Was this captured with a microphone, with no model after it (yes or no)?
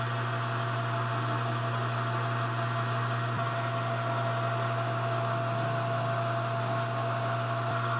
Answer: yes